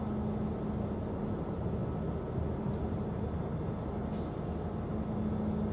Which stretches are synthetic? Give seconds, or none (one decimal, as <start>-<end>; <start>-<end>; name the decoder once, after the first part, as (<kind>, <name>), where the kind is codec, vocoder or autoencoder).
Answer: none